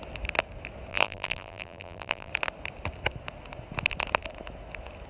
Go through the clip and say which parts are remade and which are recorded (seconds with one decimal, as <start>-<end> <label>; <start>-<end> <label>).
0.0-0.9 recorded; 0.9-2.3 remade; 2.3-5.1 recorded